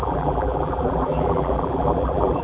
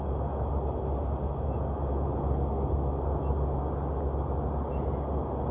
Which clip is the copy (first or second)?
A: first